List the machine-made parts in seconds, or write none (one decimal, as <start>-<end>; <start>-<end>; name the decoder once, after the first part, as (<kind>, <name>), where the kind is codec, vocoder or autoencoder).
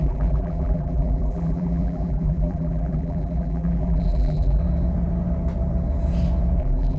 0.0-4.6 (vocoder, BigVGAN v2); 6.6-7.0